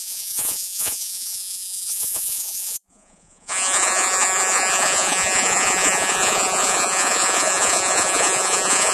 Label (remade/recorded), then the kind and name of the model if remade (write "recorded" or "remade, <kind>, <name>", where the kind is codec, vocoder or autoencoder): remade, vocoder, Vocos